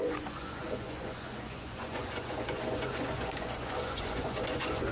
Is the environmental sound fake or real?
fake